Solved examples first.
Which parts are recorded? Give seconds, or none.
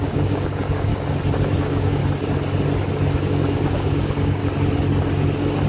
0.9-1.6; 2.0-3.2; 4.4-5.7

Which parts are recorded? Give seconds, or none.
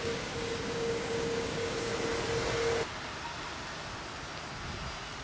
1.9-5.2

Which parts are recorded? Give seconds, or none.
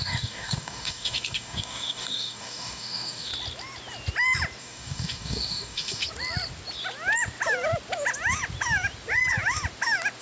3.3-4.6; 6.0-10.2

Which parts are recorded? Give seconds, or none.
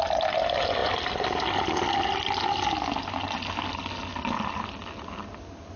0.0-5.8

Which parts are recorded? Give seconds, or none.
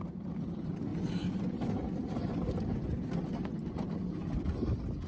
0.0-5.1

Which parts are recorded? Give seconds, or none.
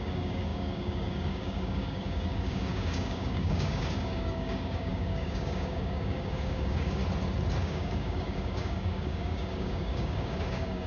7.0-7.6